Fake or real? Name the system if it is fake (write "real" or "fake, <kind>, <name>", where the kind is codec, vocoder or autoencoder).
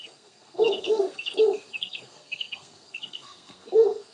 fake, codec, SNAC